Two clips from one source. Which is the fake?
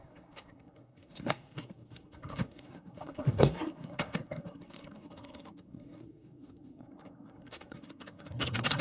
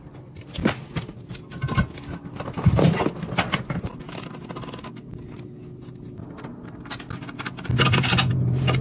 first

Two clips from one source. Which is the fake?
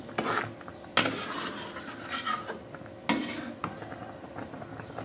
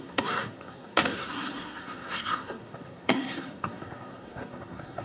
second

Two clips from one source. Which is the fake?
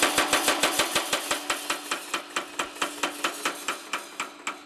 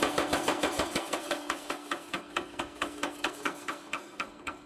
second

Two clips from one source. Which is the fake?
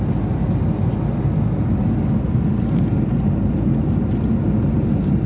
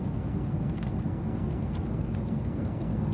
second